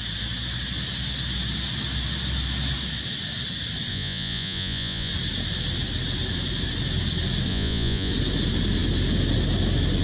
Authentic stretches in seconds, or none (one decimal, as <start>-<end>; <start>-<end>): 0.0-3.9; 5.1-7.5; 8.1-10.0